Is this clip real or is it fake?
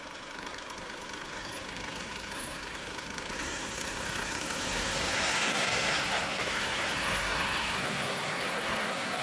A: fake